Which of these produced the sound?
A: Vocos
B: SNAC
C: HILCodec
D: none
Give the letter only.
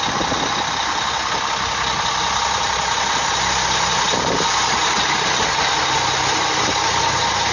D